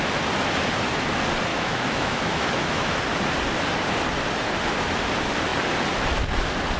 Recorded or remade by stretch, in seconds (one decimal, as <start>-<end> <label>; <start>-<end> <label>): 0.0-1.5 recorded; 1.5-3.0 remade; 3.0-6.8 recorded